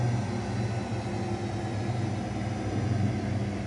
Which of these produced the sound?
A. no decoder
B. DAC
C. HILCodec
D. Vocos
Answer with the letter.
A